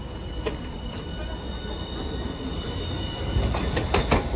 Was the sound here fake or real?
real